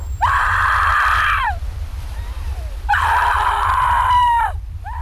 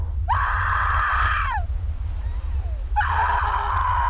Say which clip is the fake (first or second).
first